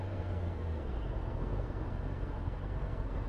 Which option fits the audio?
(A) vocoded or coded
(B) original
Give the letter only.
A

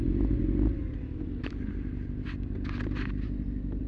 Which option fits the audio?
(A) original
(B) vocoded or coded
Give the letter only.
A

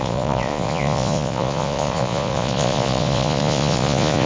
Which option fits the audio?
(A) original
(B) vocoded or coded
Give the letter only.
B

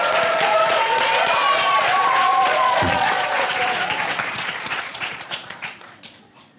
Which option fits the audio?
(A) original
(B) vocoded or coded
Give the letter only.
B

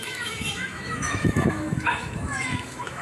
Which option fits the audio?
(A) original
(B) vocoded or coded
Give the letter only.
B